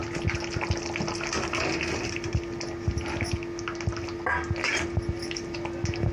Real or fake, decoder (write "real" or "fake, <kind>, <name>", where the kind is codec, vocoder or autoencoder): real